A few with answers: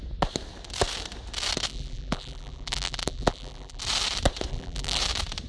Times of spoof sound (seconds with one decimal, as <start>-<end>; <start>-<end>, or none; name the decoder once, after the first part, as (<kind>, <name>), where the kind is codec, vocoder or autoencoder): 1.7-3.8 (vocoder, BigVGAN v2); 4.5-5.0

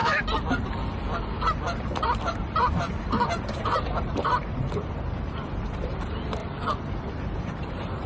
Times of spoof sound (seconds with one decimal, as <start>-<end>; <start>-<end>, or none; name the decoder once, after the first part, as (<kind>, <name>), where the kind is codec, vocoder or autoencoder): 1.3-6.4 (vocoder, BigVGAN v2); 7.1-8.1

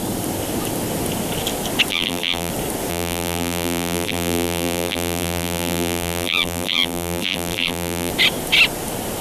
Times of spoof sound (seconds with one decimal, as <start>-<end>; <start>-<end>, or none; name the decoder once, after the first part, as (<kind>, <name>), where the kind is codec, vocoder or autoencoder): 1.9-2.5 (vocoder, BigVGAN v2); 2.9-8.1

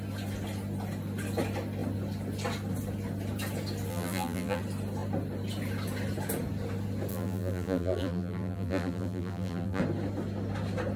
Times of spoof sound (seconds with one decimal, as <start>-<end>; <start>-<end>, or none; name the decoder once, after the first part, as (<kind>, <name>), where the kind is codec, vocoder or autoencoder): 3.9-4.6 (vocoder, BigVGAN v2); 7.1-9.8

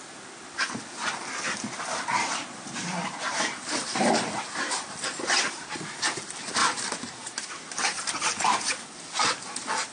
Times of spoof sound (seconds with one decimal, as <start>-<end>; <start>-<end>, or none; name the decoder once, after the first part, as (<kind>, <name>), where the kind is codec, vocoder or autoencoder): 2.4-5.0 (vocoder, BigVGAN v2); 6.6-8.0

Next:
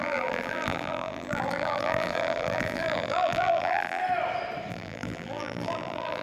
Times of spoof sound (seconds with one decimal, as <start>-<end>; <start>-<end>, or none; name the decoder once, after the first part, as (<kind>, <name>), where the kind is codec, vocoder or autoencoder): 0.0-4.0 (vocoder, BigVGAN v2); 4.7-6.2